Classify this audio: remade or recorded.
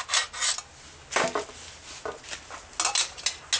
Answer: recorded